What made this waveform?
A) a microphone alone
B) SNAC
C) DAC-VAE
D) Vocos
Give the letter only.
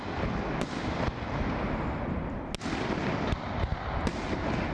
A